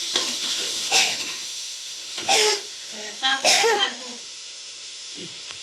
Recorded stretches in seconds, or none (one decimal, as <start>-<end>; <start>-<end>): none